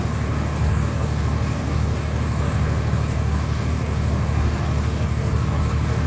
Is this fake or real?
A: fake